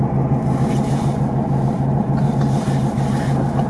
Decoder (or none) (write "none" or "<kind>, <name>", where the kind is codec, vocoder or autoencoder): none